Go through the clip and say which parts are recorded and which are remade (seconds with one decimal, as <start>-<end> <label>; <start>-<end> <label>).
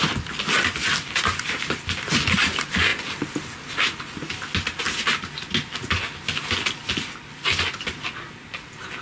0.0-9.0 recorded